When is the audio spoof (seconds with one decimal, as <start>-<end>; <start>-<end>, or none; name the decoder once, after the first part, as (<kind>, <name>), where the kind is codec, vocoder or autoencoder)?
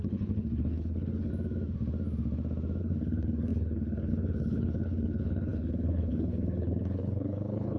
0.0-1.3 (codec, HILCodec); 2.8-7.8